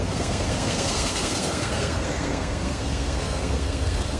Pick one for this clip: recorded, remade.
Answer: remade